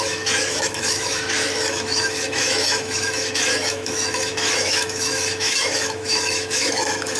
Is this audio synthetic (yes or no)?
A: yes